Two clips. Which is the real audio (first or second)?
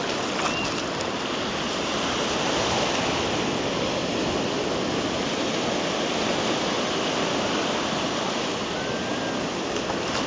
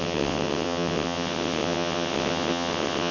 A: first